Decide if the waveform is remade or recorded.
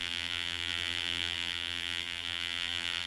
remade